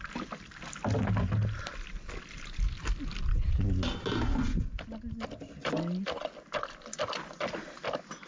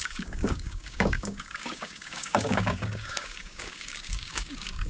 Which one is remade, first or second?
second